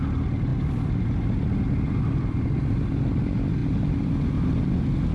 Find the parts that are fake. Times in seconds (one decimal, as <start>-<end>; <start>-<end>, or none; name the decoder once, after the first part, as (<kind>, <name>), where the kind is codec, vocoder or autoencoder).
none